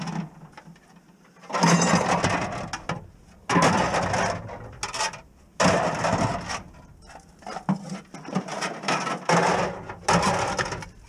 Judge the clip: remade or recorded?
recorded